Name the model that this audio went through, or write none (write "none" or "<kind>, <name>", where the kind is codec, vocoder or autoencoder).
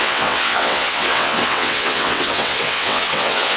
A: vocoder, WaveNeXt